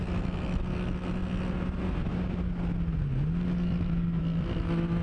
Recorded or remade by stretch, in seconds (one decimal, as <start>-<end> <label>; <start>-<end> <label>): 0.0-5.0 recorded

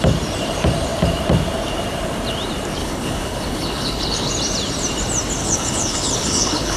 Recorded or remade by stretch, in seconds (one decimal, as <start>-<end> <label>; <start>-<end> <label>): 0.0-2.8 recorded; 2.8-4.3 remade; 4.3-5.4 recorded; 5.4-6.8 remade

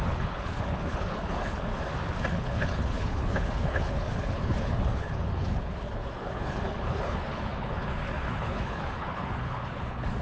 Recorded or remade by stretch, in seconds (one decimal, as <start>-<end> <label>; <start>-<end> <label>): 0.0-1.7 remade; 1.7-2.3 recorded; 2.3-10.2 remade

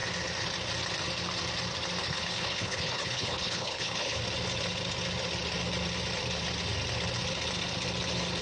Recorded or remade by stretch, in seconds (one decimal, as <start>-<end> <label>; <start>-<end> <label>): 0.0-2.0 recorded; 2.0-4.2 remade; 4.2-8.4 recorded

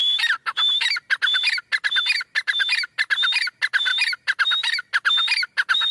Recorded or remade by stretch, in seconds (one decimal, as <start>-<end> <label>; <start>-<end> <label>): 0.0-5.9 recorded